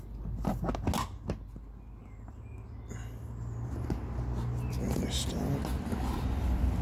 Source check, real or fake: real